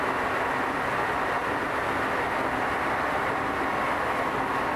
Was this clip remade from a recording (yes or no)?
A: no